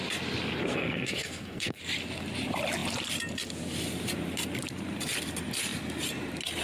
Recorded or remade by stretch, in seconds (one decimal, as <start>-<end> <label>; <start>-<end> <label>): 0.0-0.7 recorded; 0.7-1.8 remade; 1.8-6.6 recorded